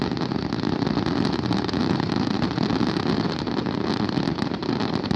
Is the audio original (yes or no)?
yes